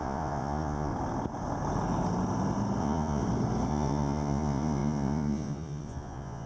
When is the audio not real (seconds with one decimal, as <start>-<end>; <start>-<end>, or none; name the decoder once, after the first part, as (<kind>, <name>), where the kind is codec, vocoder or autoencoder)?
0.0-0.9 (vocoder, Vocos); 2.8-3.2; 3.7-6.5

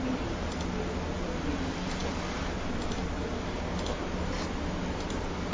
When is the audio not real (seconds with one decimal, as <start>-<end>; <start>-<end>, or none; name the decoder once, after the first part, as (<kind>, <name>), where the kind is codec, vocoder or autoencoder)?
none